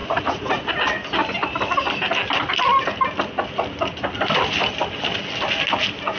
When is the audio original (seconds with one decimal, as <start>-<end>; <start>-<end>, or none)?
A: 0.7-6.2